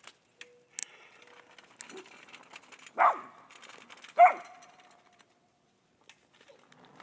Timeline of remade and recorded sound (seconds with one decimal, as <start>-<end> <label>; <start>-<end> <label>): 0.0-7.0 recorded